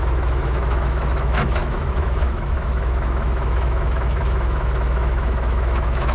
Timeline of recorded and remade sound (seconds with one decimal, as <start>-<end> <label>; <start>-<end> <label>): 0.0-6.1 remade